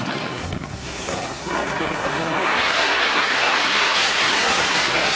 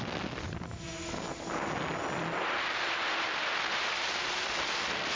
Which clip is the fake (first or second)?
first